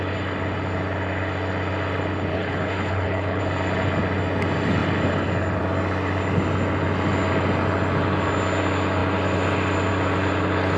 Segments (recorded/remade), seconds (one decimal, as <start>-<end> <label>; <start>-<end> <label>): 0.0-2.3 recorded; 2.3-3.4 remade; 3.4-10.8 recorded